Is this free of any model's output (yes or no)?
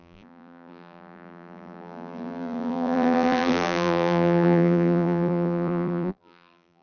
no